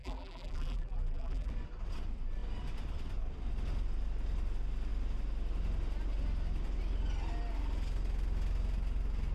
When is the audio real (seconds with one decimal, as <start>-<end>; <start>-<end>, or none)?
1.5-9.3

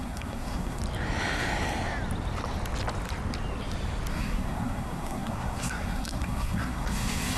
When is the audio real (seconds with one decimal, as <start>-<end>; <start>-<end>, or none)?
0.8-4.1

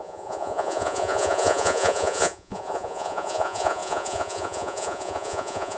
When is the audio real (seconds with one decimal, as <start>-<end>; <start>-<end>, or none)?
none

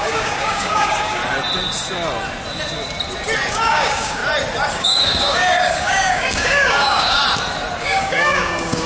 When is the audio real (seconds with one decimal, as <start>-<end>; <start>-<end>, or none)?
1.2-3.5; 4.2-4.7; 7.2-7.8

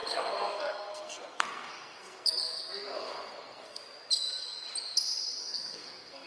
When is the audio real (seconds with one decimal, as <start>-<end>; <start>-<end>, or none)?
3.8-5.4

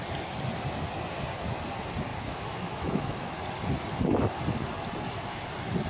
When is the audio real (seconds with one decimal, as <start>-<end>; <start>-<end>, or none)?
0.0-2.1; 3.3-5.9

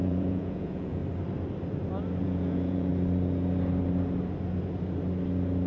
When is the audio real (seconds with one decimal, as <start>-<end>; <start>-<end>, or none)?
1.0-2.2; 2.9-5.7